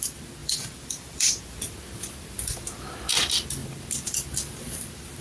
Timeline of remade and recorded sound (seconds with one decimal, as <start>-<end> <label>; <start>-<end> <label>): 0.0-0.4 recorded; 0.4-1.7 remade; 1.7-5.2 recorded